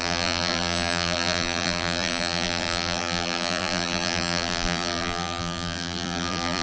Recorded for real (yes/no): no